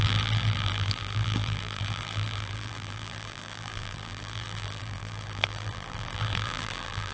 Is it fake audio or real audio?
fake